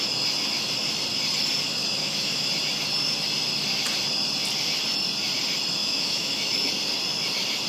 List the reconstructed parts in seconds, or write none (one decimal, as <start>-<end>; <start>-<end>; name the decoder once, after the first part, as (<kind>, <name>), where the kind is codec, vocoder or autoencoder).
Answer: 1.8-2.5 (autoencoder, DAC-VAE); 5.8-6.7